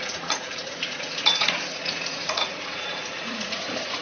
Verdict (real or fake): fake